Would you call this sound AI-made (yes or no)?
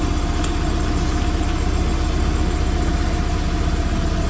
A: no